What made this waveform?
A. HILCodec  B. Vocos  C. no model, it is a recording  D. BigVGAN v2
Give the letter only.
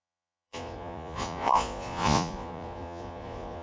B